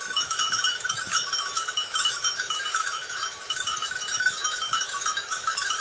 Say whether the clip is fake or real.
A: fake